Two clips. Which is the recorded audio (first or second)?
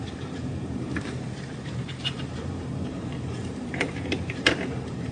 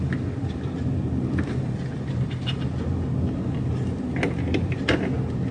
second